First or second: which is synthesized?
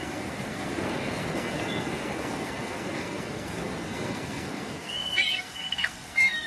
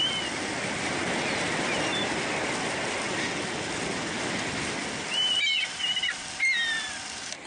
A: first